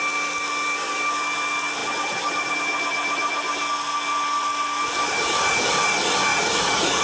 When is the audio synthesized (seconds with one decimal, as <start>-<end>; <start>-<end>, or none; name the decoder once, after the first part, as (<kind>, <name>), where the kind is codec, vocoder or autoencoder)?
6.3-7.0 (vocoder, Vocos)